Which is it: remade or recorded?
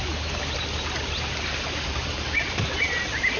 recorded